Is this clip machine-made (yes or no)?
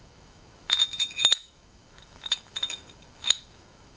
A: yes